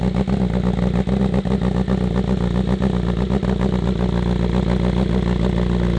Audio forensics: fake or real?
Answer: real